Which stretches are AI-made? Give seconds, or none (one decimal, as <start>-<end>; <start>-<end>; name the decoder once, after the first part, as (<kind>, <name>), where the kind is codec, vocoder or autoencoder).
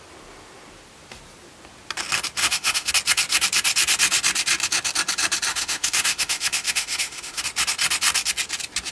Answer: 2.4-2.9 (autoencoder, DAC-VAE); 5.5-7.4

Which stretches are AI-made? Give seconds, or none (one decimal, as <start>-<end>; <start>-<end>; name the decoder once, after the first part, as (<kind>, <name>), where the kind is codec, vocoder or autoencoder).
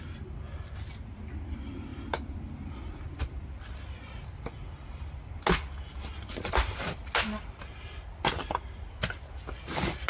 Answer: none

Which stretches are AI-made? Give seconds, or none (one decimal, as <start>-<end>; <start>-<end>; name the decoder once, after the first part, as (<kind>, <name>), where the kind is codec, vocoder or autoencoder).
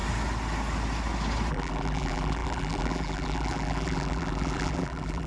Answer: 1.5-5.3 (vocoder, BigVGAN v2)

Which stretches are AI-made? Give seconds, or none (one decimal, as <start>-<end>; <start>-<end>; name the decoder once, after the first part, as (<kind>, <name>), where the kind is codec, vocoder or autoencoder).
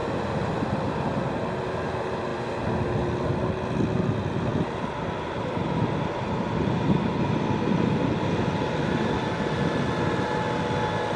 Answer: none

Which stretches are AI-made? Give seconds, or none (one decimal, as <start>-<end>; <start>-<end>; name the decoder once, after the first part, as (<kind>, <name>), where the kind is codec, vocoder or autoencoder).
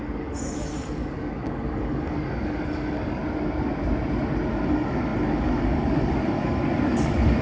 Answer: 0.0-3.2 (codec, DAC); 4.5-7.4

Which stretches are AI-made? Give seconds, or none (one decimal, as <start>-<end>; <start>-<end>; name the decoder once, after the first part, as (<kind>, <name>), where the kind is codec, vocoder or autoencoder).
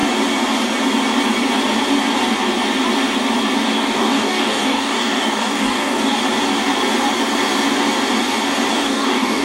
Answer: 3.7-6.2 (codec, DAC); 8.7-9.4